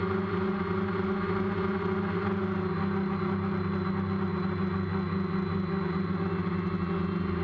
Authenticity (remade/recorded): recorded